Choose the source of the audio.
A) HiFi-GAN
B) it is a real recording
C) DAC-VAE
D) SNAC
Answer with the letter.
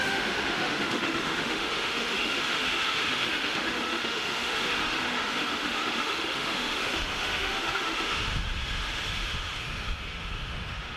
C